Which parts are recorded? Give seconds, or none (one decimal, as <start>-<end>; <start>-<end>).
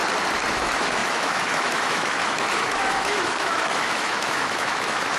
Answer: 0.0-0.5